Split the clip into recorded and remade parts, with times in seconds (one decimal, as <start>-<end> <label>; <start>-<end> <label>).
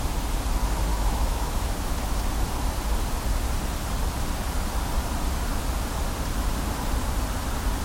0.0-0.9 recorded; 0.9-2.3 remade; 2.3-7.8 recorded